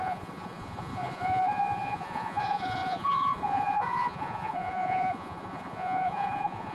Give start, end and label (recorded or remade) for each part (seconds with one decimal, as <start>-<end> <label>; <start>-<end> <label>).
0.0-6.7 remade